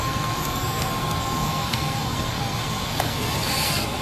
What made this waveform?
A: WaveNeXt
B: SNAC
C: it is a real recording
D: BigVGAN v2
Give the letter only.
B